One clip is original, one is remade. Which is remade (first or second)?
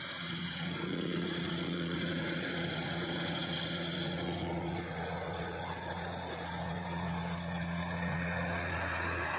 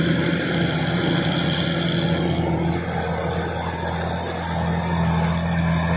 first